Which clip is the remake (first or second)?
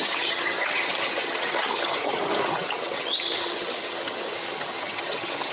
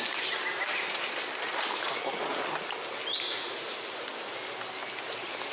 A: first